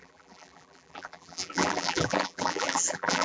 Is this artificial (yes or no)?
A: yes